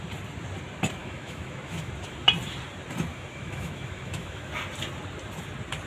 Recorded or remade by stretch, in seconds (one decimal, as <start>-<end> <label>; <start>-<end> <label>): 0.0-1.0 recorded; 1.0-1.9 remade; 1.9-3.1 recorded; 3.1-4.5 remade; 4.5-5.9 recorded